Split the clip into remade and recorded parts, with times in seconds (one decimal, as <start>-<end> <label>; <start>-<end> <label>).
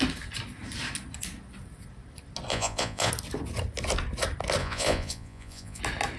0.0-2.5 recorded; 2.5-3.1 remade; 3.1-4.6 recorded; 4.6-5.8 remade; 5.8-6.2 recorded